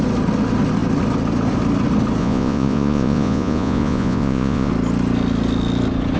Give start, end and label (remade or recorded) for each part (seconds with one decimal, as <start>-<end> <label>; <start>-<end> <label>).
0.0-2.2 recorded; 2.2-4.7 remade; 4.7-6.2 recorded